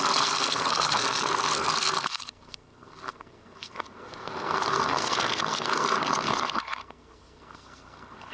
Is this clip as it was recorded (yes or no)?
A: no